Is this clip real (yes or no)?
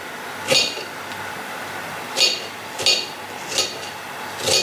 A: yes